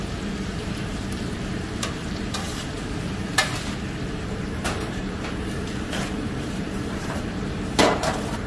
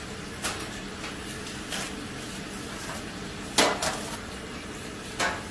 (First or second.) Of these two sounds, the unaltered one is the second